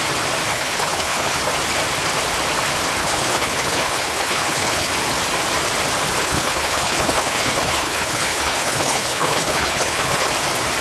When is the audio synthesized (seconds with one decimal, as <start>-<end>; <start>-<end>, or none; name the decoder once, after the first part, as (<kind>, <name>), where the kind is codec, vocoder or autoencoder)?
0.5-1.4 (codec, HILCodec); 3.0-4.9; 6.2-10.3